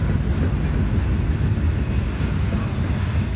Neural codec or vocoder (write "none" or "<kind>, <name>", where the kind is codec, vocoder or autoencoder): none